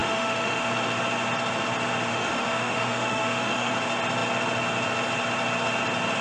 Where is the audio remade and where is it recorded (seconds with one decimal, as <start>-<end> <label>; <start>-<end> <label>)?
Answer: 0.0-0.7 remade; 0.7-2.1 recorded; 2.1-3.7 remade; 3.7-6.2 recorded